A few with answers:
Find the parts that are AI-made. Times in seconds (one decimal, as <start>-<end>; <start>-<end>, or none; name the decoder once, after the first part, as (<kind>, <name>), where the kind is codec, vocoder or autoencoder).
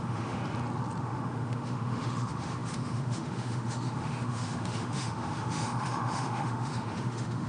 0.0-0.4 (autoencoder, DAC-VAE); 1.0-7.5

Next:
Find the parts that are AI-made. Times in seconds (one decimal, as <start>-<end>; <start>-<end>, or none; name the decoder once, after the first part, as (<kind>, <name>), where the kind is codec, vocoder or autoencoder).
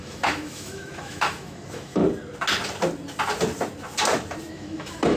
0.0-2.0 (autoencoder, DAC-VAE); 4.5-5.2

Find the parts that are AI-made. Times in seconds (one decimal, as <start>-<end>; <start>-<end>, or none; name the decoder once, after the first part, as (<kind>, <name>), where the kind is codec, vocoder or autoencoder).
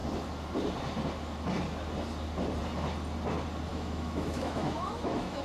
3.7-5.4 (autoencoder, DAC-VAE)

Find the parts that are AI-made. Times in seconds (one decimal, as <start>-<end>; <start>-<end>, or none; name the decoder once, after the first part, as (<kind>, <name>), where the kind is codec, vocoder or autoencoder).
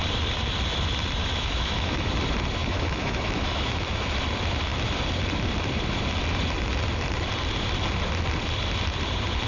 1.2-2.1 (autoencoder, DAC-VAE); 2.6-4.1